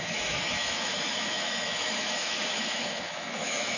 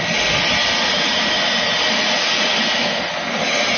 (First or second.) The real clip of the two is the second